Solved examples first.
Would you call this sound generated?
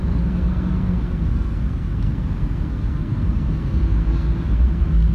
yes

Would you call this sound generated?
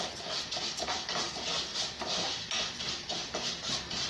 no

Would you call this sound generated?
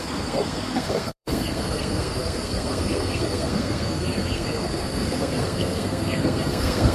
yes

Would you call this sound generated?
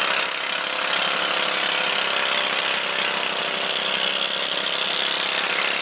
no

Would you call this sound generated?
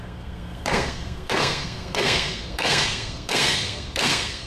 yes